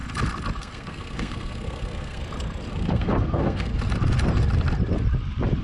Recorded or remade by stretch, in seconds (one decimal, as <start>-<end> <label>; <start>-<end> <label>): 0.0-0.6 recorded; 0.6-2.2 remade; 2.2-2.7 recorded; 2.7-3.7 remade; 3.7-5.6 recorded